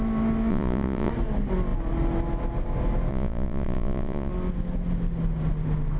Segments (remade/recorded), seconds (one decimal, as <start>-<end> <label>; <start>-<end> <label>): 0.0-0.5 recorded; 0.5-1.1 remade; 1.1-3.1 recorded; 3.1-4.3 remade; 4.3-6.0 recorded